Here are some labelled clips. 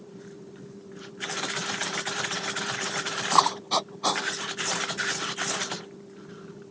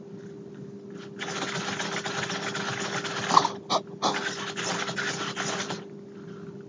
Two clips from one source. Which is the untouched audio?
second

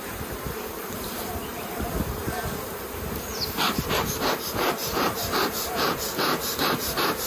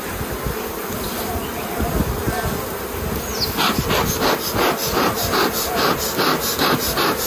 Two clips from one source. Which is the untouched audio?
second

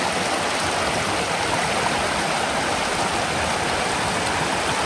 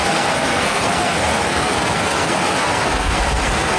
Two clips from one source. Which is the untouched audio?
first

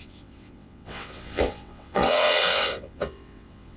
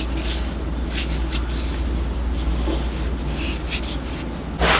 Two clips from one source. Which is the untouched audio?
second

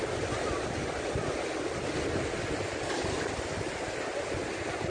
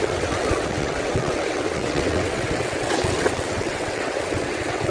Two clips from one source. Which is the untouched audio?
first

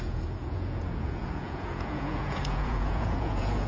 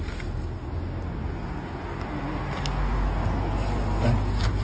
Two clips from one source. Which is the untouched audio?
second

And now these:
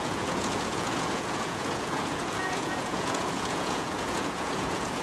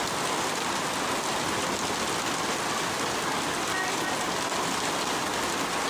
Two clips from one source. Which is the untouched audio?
second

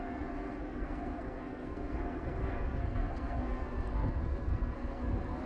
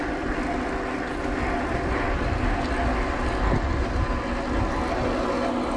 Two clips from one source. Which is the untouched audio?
second